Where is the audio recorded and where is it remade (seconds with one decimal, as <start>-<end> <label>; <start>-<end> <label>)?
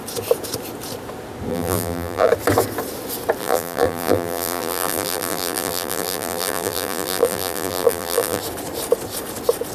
0.0-1.5 recorded; 1.5-2.3 remade; 2.3-3.4 recorded; 3.4-8.4 remade; 8.4-9.7 recorded